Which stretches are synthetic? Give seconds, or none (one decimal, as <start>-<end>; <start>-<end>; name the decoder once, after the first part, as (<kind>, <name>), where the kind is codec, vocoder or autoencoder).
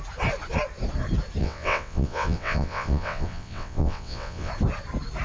1.4-4.5 (vocoder, WaveNeXt)